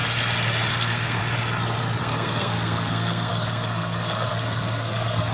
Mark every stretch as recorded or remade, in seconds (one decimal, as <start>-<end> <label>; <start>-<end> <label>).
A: 0.0-0.7 recorded; 0.7-1.2 remade; 1.2-2.0 recorded; 2.0-5.3 remade